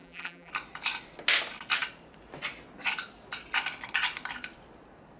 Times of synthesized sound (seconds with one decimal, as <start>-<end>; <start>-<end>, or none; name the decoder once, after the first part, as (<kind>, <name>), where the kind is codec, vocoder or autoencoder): 0.0-0.5 (vocoder, BigVGAN v2)